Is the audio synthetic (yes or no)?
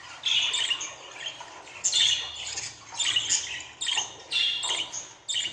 no